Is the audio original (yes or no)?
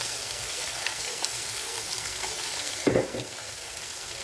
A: no